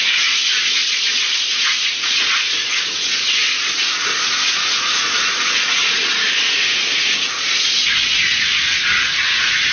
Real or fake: fake